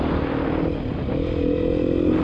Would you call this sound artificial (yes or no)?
no